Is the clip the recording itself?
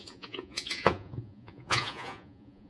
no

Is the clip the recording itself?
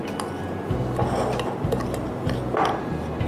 yes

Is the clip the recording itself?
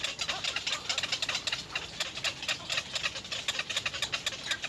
yes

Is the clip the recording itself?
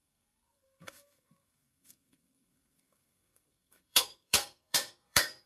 no